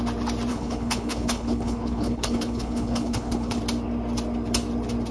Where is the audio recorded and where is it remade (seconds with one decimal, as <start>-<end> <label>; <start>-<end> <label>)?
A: 0.0-0.5 recorded; 0.5-3.6 remade; 3.6-5.1 recorded